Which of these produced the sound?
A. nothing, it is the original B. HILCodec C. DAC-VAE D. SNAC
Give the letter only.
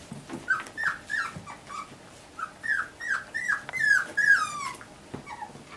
A